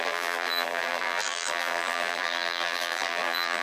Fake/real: fake